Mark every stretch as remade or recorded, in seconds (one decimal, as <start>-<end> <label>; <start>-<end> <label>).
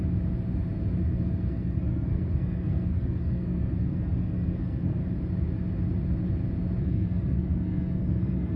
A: 0.0-1.0 recorded; 1.0-5.0 remade; 5.0-6.8 recorded; 6.8-8.6 remade